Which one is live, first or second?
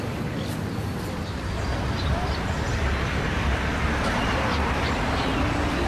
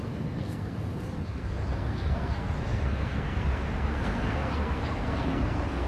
first